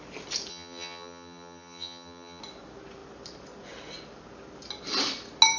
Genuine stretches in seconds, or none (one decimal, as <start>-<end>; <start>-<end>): 0.0-0.5; 2.4-5.6